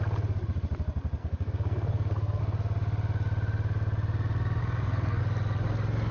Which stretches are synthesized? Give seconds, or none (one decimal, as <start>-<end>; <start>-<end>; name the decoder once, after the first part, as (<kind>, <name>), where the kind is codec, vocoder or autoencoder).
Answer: 1.2-2.4 (codec, SNAC); 4.6-5.2